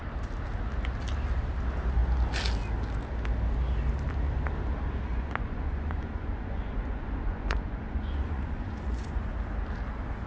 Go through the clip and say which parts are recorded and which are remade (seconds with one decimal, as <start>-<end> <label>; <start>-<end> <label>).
0.0-5.1 recorded; 5.1-9.3 remade; 9.3-10.3 recorded